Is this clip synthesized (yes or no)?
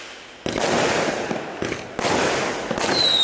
no